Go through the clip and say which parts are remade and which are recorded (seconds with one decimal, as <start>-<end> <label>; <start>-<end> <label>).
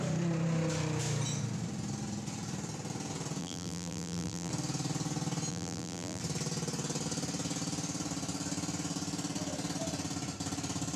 0.0-3.4 recorded; 3.4-4.5 remade; 4.5-5.5 recorded; 5.5-6.2 remade; 6.2-11.0 recorded